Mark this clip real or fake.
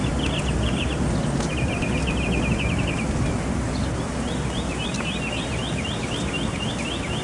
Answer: real